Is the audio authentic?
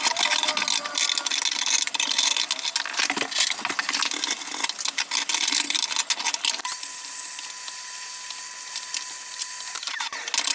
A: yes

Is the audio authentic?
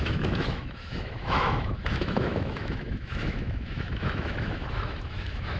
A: no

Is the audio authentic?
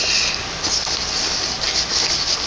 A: yes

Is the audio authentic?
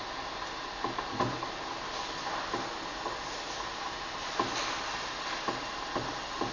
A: yes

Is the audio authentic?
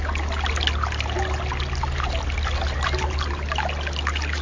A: yes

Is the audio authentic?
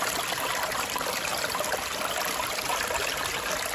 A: yes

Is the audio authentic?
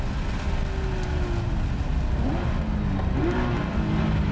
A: yes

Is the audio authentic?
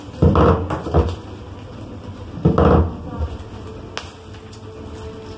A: yes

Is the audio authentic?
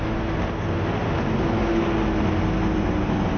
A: yes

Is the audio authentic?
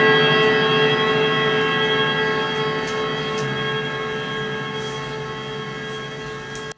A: yes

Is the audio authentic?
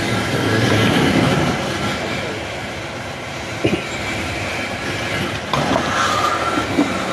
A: yes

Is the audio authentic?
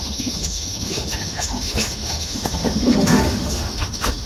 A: no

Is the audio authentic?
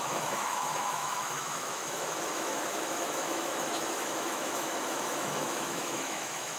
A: no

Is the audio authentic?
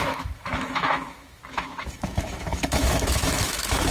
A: no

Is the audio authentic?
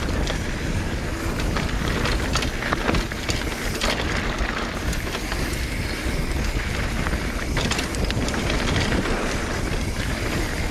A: yes